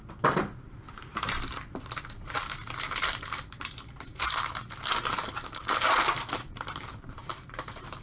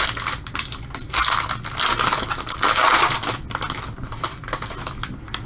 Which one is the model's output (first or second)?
first